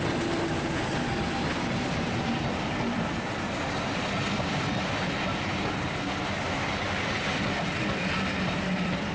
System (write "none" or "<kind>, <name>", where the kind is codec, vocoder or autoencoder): none